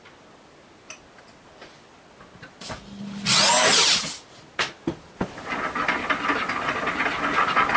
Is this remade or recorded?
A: recorded